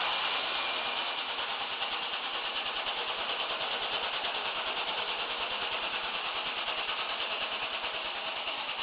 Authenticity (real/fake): fake